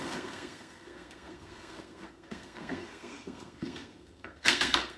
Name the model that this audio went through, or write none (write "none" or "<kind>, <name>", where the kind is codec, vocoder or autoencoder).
codec, SNAC